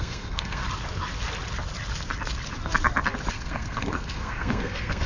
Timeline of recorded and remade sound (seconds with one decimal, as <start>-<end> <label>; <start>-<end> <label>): 0.0-0.6 remade; 0.6-3.3 recorded; 3.3-5.1 remade